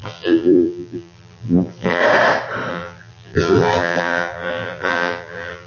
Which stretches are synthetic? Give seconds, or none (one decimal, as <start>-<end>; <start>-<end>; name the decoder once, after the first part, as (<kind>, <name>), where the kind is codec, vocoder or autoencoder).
0.0-2.0 (vocoder, BigVGAN v2); 2.7-5.7